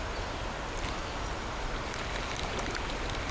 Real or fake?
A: real